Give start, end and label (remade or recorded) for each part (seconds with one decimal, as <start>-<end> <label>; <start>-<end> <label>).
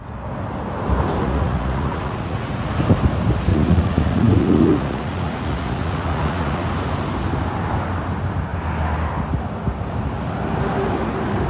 0.0-1.2 recorded; 1.2-2.7 remade; 2.7-3.5 recorded; 3.5-6.7 remade; 6.7-11.5 recorded